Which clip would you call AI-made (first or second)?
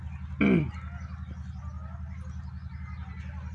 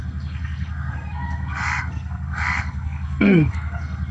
second